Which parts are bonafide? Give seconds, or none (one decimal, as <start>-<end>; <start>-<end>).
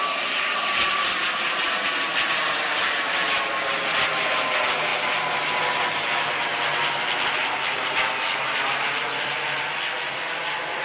0.0-10.8